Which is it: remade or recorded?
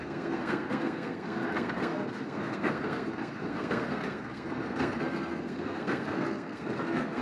remade